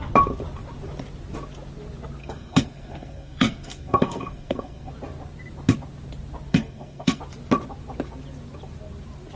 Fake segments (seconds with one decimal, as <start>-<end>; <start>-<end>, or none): 2.2-4.9; 6.5-7.2